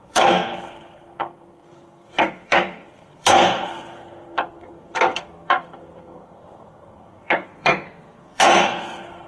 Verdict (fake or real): fake